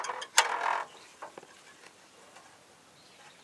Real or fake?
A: real